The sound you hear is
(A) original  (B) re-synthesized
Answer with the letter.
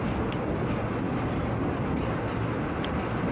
A